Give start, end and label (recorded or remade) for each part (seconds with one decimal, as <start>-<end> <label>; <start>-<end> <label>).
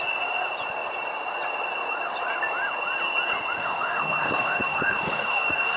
0.0-3.6 recorded; 3.6-5.8 remade